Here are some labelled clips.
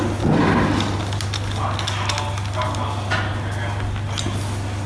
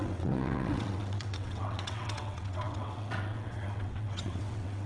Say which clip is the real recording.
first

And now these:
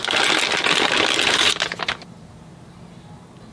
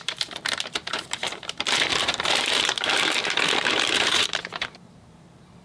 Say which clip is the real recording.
first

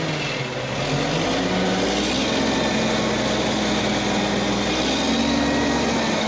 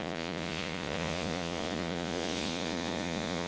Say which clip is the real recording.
first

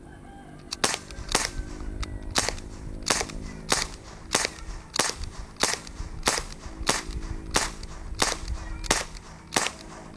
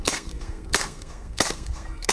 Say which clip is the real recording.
first